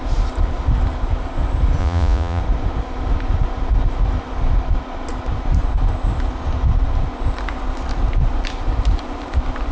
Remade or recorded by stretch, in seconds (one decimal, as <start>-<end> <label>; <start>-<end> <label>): 0.0-1.8 recorded; 1.8-2.4 remade; 2.4-9.7 recorded